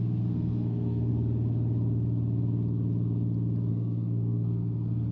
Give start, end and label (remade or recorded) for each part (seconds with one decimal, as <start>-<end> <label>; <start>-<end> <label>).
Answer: 0.0-1.1 remade; 1.1-3.7 recorded; 3.7-5.1 remade